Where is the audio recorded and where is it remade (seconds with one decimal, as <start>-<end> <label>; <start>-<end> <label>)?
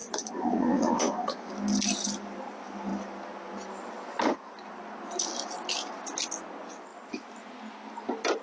0.0-1.5 remade; 1.5-8.4 recorded